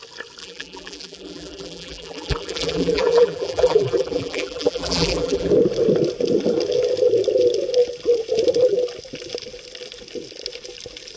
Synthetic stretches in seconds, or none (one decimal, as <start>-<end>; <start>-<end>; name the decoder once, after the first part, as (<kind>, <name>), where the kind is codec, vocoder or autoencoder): 0.4-5.5 (vocoder, BigVGAN v2)